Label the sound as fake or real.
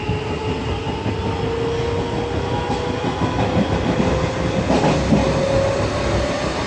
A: real